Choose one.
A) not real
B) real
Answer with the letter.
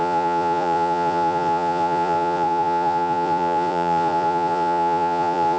A